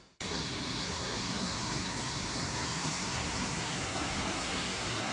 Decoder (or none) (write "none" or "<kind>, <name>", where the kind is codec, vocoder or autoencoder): codec, SNAC